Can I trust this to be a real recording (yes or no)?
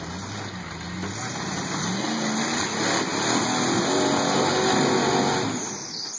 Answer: yes